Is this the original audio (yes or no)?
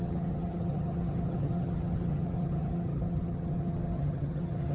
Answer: no